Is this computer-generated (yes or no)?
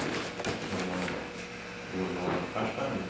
no